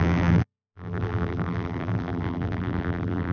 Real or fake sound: fake